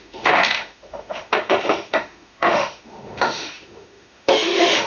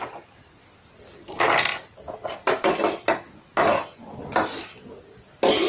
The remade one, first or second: first